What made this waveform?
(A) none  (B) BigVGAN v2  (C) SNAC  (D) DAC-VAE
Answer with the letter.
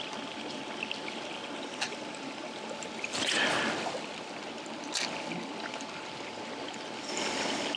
A